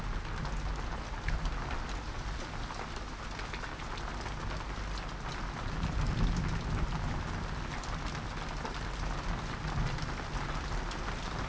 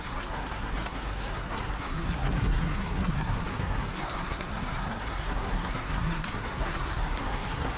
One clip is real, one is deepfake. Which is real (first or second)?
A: first